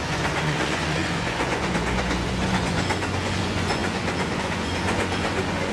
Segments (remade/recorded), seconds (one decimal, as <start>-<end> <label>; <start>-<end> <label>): 0.0-5.7 remade